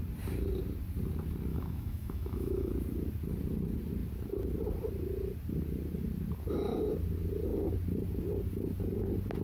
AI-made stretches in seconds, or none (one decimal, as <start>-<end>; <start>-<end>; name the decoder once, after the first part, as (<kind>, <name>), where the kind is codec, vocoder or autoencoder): 1.5-2.7 (autoencoder, DAC-VAE)

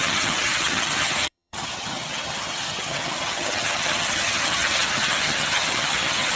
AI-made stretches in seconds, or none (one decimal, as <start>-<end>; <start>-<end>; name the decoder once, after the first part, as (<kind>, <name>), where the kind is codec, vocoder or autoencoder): 0.0-6.4 (vocoder, HiFi-GAN)

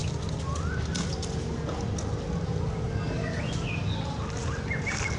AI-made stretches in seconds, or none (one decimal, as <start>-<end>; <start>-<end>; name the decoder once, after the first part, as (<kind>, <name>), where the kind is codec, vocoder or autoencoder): none

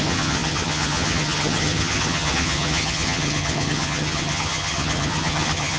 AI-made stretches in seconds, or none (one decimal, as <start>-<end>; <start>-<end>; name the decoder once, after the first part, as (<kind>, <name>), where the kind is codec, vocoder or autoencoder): 0.0-5.8 (vocoder, HiFi-GAN)

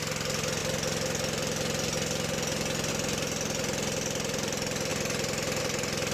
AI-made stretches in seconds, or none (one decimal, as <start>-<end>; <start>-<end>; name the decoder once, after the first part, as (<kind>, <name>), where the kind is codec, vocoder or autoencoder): none